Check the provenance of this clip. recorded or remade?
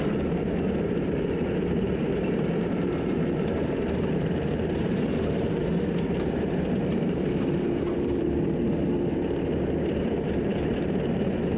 remade